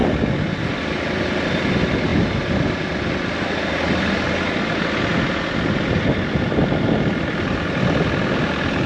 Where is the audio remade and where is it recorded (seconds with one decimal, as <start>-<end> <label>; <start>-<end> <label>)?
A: 0.0-0.6 recorded; 0.6-2.1 remade; 2.1-7.1 recorded; 7.1-8.9 remade